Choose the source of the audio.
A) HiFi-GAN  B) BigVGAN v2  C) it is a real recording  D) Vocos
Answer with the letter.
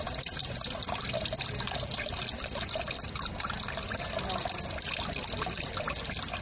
C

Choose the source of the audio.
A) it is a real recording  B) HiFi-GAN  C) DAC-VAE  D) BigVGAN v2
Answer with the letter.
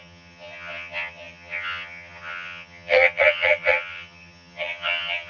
B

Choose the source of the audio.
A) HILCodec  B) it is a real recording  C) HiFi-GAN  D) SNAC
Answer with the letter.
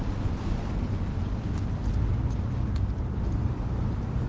B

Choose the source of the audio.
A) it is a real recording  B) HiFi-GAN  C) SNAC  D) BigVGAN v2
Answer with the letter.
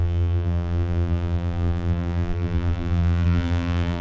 D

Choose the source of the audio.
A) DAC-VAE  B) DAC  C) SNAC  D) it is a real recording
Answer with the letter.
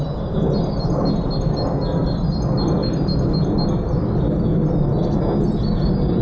D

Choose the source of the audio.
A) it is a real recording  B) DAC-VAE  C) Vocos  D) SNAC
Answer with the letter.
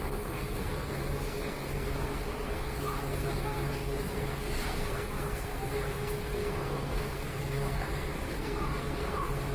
D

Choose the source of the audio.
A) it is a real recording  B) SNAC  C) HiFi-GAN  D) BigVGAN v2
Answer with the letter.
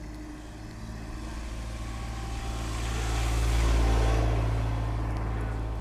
A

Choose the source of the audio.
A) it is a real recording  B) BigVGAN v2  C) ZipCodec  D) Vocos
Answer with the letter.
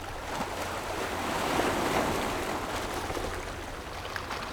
A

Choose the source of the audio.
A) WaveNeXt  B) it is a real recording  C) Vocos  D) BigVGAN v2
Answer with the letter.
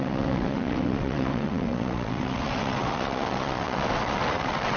A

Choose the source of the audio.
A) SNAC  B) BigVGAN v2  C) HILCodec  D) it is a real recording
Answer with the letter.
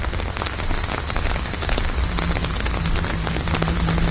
D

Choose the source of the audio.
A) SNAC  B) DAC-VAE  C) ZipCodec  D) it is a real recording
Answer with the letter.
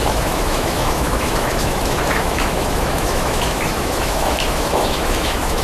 B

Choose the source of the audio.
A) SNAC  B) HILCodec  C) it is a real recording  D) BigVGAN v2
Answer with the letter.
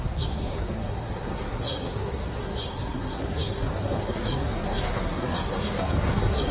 A